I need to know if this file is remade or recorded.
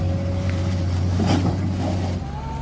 recorded